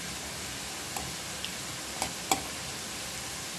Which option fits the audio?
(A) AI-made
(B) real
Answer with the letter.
B